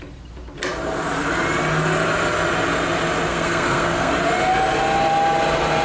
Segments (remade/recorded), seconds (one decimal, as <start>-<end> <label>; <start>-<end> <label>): 0.0-3.3 recorded; 3.3-4.1 remade; 4.1-5.8 recorded